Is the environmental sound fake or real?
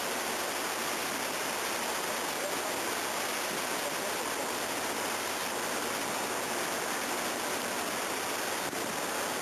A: real